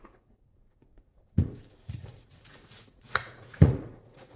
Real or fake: fake